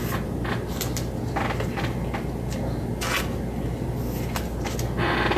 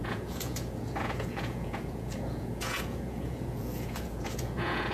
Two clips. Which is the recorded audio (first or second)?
first